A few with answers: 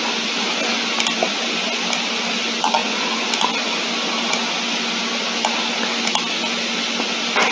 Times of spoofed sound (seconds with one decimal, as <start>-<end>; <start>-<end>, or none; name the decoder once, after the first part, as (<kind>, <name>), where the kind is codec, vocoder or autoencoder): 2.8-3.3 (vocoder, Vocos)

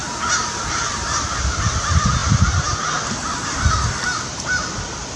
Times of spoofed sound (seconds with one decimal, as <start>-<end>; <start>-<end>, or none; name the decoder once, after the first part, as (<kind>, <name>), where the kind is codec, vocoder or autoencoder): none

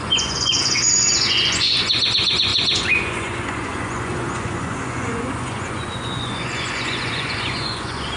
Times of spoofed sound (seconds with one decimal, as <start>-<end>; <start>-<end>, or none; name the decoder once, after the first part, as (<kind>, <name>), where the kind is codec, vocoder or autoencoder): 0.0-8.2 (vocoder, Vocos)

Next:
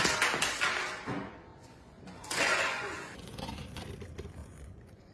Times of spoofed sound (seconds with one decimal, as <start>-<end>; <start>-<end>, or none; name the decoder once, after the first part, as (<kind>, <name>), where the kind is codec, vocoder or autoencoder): 1.5-3.8 (vocoder, Vocos); 4.4-5.1